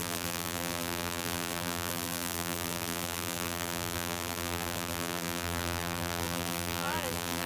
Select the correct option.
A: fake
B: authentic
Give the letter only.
A